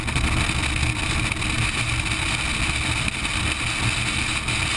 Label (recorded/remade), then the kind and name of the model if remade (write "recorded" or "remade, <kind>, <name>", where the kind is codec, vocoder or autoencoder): recorded